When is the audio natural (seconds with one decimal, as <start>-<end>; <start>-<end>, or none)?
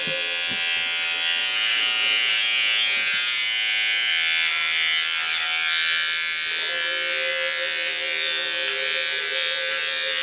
0.0-1.4; 4.1-10.2